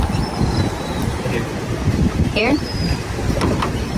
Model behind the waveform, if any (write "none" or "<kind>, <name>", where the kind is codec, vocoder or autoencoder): vocoder, BigVGAN v2